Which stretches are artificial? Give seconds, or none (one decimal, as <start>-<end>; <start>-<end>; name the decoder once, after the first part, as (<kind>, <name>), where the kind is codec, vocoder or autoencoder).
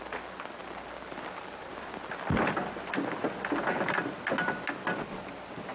none